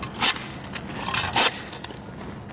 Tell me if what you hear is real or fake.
real